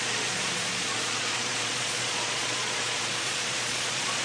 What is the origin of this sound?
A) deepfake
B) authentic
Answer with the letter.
A